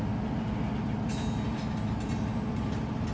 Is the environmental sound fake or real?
real